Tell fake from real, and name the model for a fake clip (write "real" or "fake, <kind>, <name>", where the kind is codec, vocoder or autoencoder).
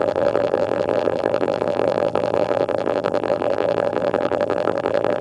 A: fake, vocoder, BigVGAN v2